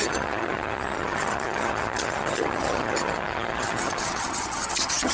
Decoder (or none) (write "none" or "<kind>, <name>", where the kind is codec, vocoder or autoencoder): vocoder, HiFi-GAN